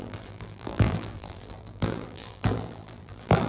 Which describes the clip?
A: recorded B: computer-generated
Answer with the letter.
B